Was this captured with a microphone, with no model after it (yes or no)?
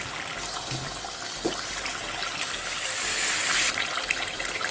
yes